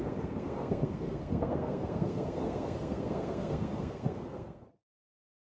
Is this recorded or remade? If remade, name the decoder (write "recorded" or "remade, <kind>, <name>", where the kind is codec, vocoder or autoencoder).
remade, codec, SNAC